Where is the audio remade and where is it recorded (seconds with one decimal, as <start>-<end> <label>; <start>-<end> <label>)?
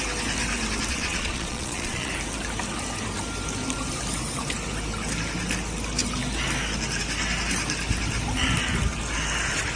0.0-0.9 recorded; 0.9-2.1 remade; 2.1-9.8 recorded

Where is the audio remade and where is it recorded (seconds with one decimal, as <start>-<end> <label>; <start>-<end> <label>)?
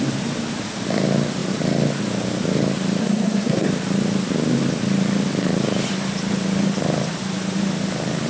0.0-3.0 recorded; 3.0-3.7 remade; 3.7-8.3 recorded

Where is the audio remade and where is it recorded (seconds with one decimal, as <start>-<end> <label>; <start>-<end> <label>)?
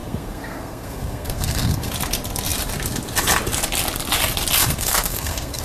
0.0-1.9 remade; 1.9-4.6 recorded; 4.6-5.6 remade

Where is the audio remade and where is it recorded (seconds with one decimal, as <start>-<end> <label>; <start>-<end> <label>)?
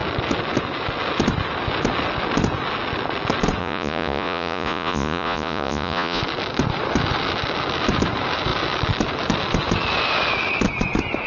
0.0-3.6 recorded; 3.6-6.2 remade; 6.2-11.3 recorded